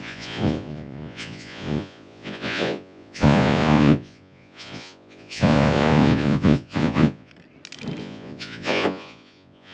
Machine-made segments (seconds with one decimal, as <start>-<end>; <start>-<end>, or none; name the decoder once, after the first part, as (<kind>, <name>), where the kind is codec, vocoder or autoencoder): 0.0-7.3 (vocoder, Vocos); 8.0-9.7

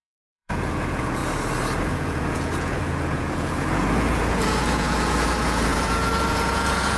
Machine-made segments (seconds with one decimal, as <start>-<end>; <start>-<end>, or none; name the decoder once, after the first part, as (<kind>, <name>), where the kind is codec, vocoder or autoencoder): 0.0-1.2 (vocoder, Vocos); 1.8-7.0

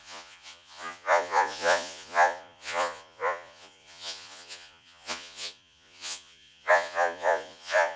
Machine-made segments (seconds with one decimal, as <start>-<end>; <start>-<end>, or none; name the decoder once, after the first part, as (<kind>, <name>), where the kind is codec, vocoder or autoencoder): 0.0-8.0 (vocoder, Vocos)

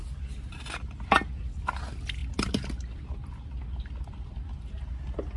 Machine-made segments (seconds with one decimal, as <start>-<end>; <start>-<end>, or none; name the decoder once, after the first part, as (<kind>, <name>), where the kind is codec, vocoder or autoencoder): none

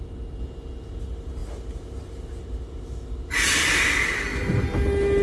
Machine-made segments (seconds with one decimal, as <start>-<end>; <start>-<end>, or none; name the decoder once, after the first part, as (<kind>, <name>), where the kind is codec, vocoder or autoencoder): none

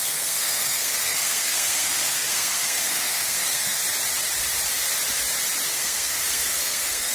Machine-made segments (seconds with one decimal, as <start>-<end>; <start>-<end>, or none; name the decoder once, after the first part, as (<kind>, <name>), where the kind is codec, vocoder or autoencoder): 0.0-3.8 (codec, SNAC); 5.7-7.1

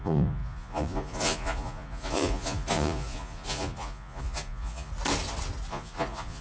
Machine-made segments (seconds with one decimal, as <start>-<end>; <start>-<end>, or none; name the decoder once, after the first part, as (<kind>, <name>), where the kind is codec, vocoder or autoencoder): 0.0-4.9 (vocoder, Vocos); 5.7-6.4